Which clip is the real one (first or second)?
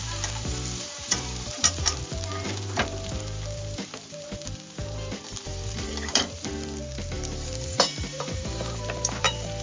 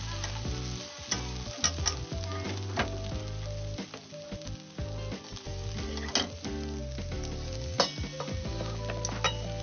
second